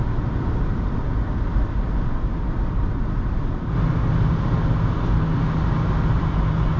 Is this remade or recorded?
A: recorded